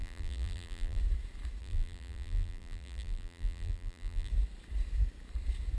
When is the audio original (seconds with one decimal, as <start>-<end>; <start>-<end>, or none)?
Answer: 1.0-1.6; 4.3-5.8